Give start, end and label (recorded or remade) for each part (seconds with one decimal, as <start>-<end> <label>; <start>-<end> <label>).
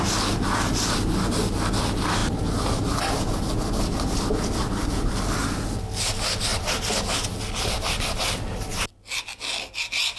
0.0-10.2 recorded